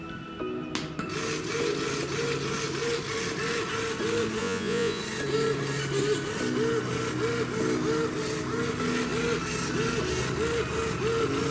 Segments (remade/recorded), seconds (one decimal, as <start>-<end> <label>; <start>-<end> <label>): 0.0-4.4 recorded; 4.4-5.0 remade; 5.0-11.5 recorded